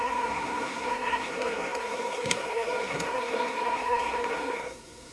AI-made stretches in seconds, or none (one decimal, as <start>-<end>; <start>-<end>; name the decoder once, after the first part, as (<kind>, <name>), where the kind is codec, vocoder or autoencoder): 0.0-5.1 (codec, SNAC)